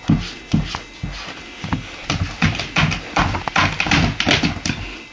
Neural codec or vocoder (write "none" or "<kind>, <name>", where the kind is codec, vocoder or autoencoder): none